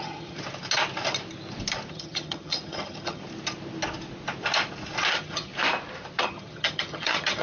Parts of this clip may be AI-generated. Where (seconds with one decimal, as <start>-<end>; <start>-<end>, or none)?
0.0-0.4; 1.9-3.2; 5.1-5.5; 6.2-7.4